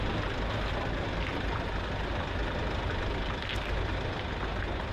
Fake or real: real